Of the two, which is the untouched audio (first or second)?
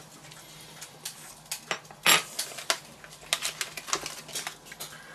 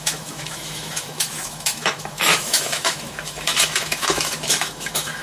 first